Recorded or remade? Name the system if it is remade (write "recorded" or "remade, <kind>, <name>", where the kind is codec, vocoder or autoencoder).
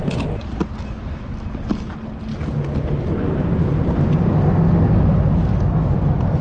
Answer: recorded